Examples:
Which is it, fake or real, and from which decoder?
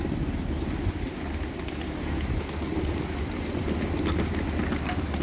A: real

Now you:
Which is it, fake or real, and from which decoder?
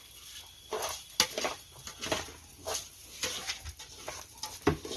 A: real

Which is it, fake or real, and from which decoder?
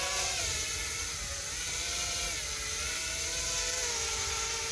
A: real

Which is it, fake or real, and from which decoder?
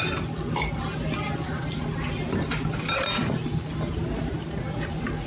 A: real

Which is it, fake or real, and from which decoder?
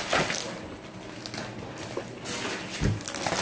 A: real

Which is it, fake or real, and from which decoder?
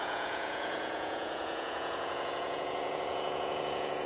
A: fake, vocoder, Vocos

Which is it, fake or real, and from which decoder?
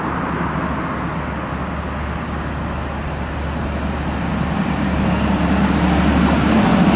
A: real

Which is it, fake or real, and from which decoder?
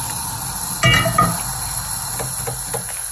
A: real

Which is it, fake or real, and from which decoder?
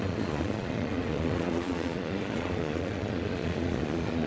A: fake, vocoder, Vocos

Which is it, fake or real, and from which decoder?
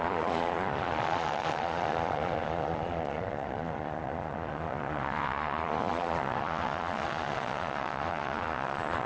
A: fake, vocoder, Vocos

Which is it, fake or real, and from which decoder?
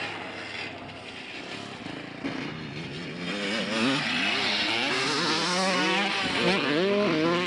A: real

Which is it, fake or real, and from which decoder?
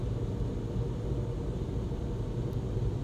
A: real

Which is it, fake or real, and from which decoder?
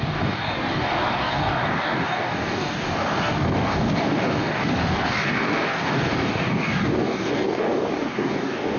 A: fake, codec, DAC